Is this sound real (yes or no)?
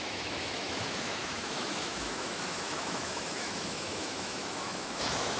no